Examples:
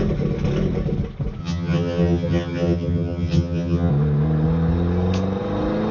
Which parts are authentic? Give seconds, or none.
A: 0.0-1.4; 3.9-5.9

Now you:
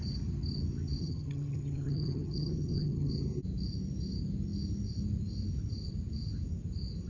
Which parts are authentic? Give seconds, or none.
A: 0.0-1.0; 3.1-7.1

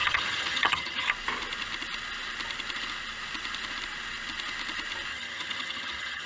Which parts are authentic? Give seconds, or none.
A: 1.1-5.1

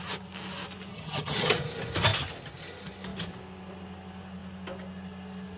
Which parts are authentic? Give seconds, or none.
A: 0.0-0.9; 1.5-5.6